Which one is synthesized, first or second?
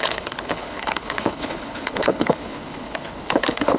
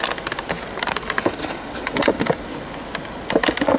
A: first